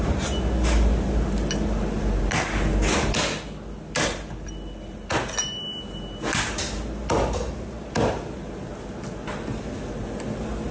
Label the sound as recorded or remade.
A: recorded